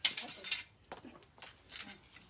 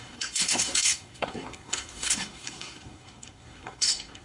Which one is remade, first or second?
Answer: second